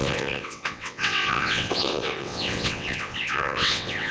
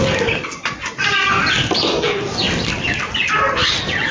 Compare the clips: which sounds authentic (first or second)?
second